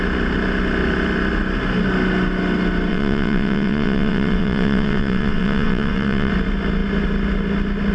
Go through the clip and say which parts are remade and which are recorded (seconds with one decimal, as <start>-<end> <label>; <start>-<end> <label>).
0.0-2.9 recorded; 2.9-6.3 remade; 6.3-7.9 recorded